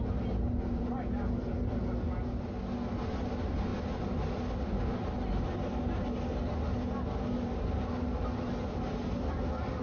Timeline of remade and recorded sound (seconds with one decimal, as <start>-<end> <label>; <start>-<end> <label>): 0.0-9.8 recorded